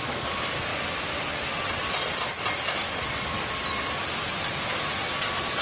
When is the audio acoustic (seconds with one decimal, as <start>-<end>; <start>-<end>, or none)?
0.0-5.6